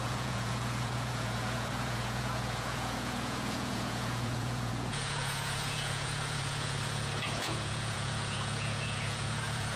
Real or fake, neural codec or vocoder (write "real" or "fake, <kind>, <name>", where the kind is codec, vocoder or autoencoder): fake, vocoder, Vocos